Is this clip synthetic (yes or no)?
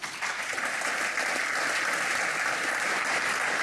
no